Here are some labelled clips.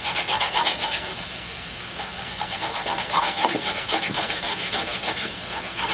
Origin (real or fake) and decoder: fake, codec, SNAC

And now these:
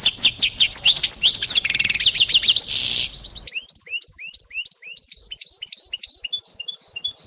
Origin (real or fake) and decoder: real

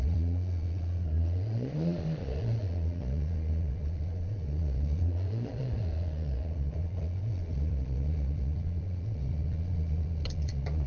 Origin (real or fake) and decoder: fake, vocoder, Vocos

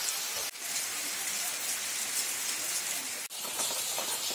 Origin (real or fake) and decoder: real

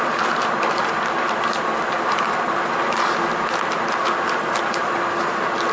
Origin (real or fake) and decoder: real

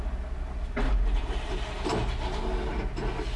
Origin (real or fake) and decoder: real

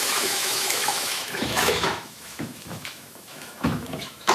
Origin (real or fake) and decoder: fake, autoencoder, DAC-VAE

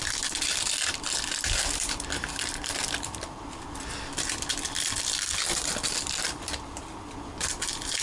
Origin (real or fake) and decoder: fake, vocoder, BigVGAN v2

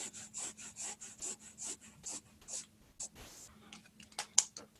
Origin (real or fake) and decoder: real